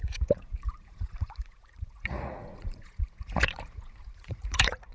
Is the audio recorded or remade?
remade